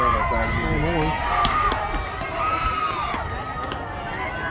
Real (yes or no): yes